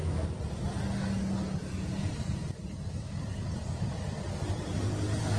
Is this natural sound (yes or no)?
yes